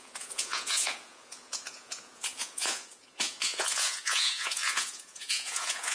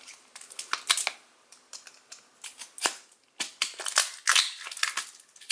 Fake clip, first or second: first